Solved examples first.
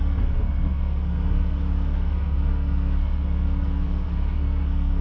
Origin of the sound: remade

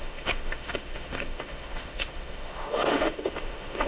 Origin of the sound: remade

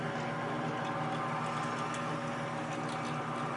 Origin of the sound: recorded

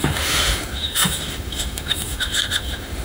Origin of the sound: remade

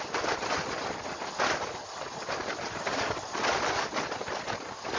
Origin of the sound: recorded